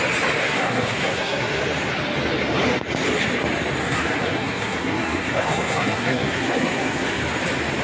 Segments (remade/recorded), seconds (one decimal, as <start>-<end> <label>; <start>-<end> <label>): 0.0-0.4 recorded; 0.4-1.6 remade; 1.6-3.8 recorded; 3.8-7.2 remade; 7.2-7.8 recorded